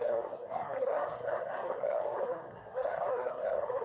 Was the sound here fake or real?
fake